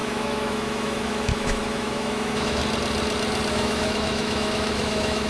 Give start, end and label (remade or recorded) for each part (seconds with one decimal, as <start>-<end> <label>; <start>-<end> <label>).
0.0-2.6 remade; 2.6-3.5 recorded; 3.5-5.3 remade